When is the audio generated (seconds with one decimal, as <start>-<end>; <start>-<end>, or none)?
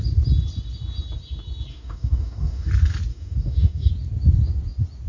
1.7-2.7; 3.1-3.9